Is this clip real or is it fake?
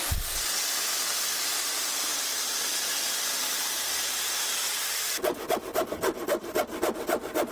fake